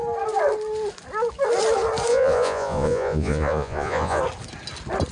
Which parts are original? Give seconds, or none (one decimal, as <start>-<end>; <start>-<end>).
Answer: 0.0-2.1; 4.2-5.1